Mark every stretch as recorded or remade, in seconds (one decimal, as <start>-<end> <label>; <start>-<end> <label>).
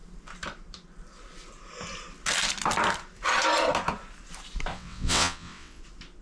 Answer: 0.0-4.7 recorded; 4.7-5.8 remade; 5.8-6.2 recorded